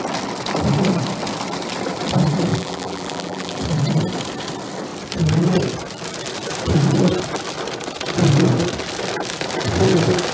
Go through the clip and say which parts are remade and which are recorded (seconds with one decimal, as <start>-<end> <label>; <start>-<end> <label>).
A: 0.0-2.5 recorded; 2.5-3.6 remade; 3.6-10.3 recorded